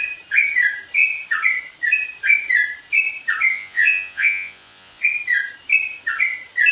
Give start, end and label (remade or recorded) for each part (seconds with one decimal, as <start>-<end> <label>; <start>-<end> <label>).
0.0-3.5 recorded; 3.5-5.0 remade; 5.0-6.7 recorded